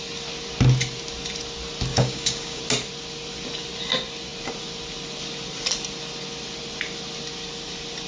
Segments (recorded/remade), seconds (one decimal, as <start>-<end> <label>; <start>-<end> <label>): 0.0-1.9 recorded; 1.9-2.6 remade; 2.6-8.1 recorded